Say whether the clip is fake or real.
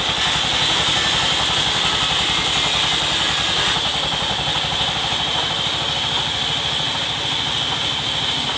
real